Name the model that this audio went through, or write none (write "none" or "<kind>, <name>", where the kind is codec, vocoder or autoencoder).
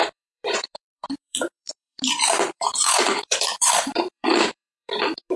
vocoder, BigVGAN v2